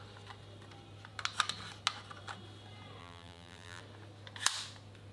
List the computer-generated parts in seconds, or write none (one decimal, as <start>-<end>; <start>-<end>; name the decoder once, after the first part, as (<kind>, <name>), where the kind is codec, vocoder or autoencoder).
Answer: 3.0-3.8 (vocoder, BigVGAN v2)